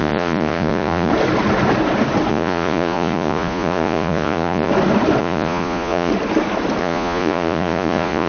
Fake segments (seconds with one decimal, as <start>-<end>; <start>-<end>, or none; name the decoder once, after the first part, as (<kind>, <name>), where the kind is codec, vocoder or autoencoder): 0.0-1.1 (vocoder, Vocos); 2.3-4.7; 5.2-6.1; 6.8-8.3